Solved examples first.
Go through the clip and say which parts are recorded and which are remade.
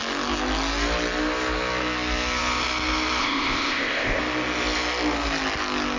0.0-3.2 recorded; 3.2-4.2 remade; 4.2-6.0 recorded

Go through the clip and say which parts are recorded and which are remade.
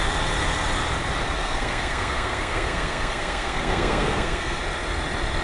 0.0-1.4 recorded; 1.4-4.6 remade; 4.6-5.4 recorded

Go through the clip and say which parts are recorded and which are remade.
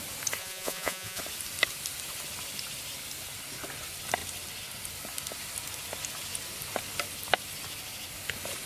0.0-0.4 recorded; 0.4-1.2 remade; 1.2-8.7 recorded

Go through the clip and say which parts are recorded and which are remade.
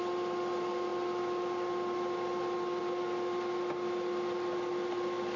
0.0-5.4 recorded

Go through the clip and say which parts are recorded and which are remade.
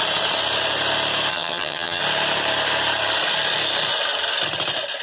0.0-1.3 recorded; 1.3-2.0 remade; 2.0-5.0 recorded